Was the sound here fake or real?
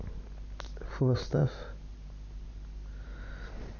real